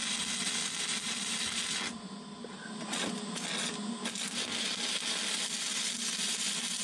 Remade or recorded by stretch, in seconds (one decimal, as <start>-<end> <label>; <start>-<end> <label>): 0.0-6.8 recorded